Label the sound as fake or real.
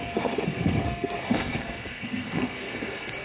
fake